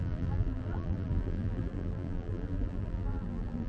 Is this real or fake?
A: fake